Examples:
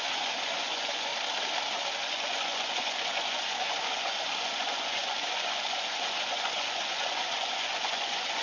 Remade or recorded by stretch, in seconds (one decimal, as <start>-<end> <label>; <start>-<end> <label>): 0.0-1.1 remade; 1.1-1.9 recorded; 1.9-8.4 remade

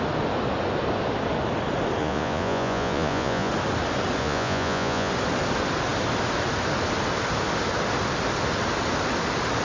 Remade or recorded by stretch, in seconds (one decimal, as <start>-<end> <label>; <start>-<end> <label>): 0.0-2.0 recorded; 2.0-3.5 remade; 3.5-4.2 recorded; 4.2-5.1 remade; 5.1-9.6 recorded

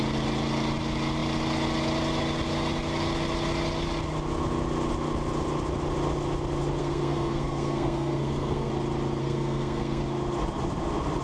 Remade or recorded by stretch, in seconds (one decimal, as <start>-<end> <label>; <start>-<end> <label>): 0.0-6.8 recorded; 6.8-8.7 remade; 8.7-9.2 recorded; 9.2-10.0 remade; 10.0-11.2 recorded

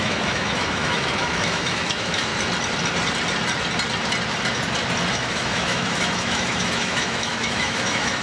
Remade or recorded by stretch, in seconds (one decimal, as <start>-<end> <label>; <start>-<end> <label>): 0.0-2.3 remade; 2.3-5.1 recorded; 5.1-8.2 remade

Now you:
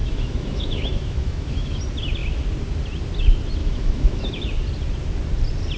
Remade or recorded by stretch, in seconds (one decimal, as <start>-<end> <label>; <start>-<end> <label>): 0.0-1.8 remade; 1.8-3.6 recorded; 3.6-4.3 remade; 4.3-5.8 recorded

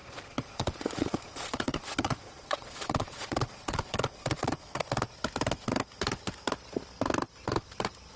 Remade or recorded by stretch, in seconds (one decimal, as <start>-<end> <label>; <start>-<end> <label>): 0.0-4.8 remade; 4.8-8.2 recorded

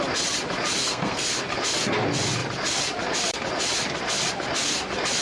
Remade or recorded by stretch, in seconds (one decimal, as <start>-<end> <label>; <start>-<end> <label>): 0.0-0.8 recorded; 0.8-1.3 remade; 1.3-5.2 recorded

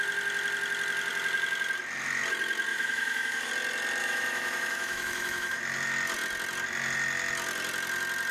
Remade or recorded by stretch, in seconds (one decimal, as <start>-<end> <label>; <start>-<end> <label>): 0.0-2.7 recorded; 2.7-3.5 remade; 3.5-4.0 recorded; 4.0-5.6 remade; 5.6-8.3 recorded